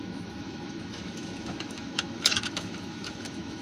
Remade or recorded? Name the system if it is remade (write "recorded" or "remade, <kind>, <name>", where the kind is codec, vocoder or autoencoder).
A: remade, autoencoder, DAC-VAE